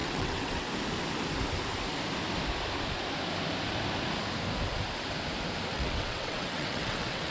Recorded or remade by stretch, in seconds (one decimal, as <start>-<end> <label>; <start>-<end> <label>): 0.0-0.7 remade; 0.7-5.7 recorded; 5.7-7.3 remade